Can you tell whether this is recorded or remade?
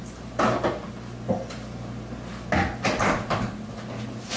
recorded